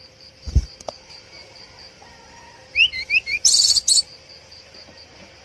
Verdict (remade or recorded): remade